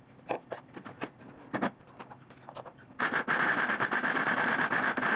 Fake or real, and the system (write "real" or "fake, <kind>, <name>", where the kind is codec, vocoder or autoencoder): real